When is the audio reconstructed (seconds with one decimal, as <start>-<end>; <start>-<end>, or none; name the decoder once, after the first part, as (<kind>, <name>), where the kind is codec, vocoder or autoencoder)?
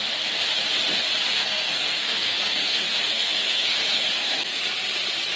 1.4-4.6 (codec, SNAC)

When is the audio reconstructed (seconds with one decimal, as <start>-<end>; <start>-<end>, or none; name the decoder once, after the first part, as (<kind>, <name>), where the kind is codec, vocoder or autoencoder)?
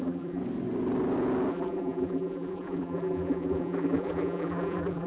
0.0-0.4 (vocoder, BigVGAN v2); 1.5-5.1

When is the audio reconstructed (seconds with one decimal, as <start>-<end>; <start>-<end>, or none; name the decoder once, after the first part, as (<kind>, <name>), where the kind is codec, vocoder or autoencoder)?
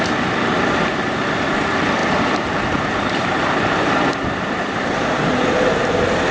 2.0-5.8 (vocoder, BigVGAN v2)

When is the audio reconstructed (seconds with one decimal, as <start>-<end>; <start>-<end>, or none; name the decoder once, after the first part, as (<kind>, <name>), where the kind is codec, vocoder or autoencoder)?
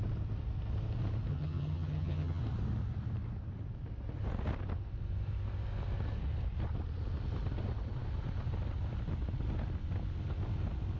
1.3-2.4 (vocoder, HiFi-GAN)